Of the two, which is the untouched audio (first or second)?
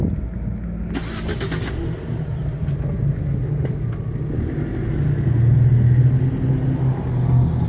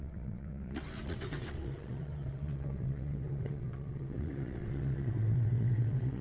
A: first